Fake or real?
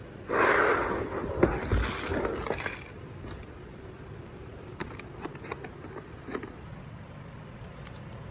real